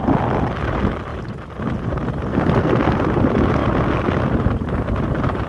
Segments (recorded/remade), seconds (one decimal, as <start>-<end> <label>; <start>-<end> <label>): 0.0-2.3 recorded; 2.3-3.0 remade; 3.0-5.5 recorded